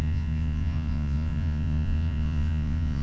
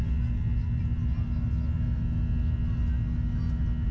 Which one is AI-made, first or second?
first